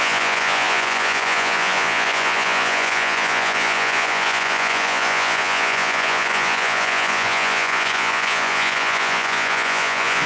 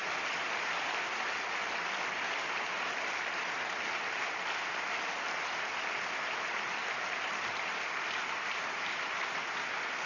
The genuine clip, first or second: second